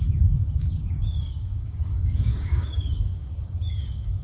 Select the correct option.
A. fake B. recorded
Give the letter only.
A